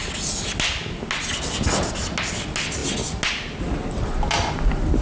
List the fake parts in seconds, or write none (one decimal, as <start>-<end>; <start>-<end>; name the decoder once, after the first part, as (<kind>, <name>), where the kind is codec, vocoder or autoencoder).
none